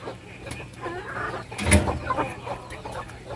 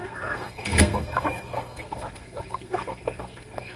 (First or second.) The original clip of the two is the first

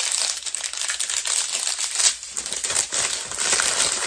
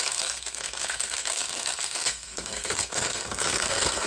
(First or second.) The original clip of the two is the first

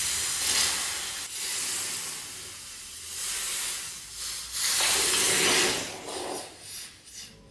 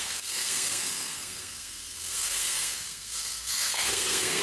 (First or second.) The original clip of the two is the first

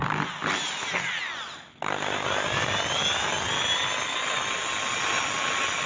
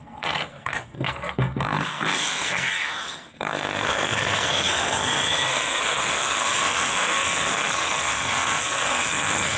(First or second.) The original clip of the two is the first